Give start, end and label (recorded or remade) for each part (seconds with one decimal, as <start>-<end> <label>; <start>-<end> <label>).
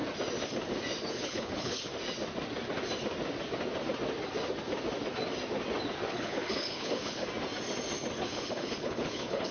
0.0-1.1 recorded; 1.1-1.9 remade; 1.9-6.1 recorded; 6.1-7.2 remade; 7.2-8.2 recorded; 8.2-9.5 remade